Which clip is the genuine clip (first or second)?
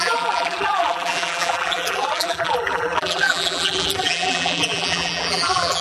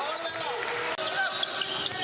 second